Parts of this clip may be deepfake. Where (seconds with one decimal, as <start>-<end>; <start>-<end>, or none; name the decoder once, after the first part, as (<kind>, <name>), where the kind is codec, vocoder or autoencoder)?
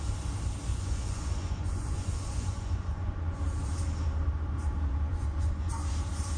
0.7-3.4 (vocoder, Vocos); 5.1-5.7